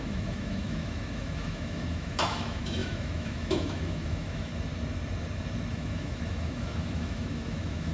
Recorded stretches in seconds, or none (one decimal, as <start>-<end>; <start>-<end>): 4.5-5.7